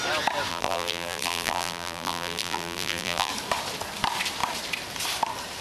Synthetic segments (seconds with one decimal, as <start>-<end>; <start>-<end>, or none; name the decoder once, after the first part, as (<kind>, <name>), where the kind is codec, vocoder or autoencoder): 0.5-3.3 (vocoder, BigVGAN v2)